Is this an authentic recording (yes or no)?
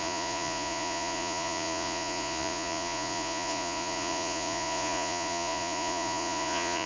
no